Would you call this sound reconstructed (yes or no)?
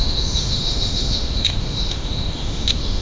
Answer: yes